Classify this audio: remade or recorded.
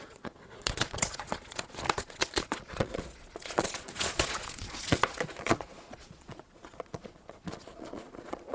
remade